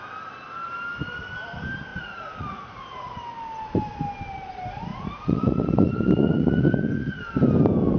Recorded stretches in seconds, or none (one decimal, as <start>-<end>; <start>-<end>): 0.0-1.9; 3.2-4.9; 7.2-8.0